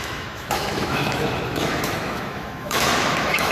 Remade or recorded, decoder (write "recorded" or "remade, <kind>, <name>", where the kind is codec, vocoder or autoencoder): remade, autoencoder, DAC-VAE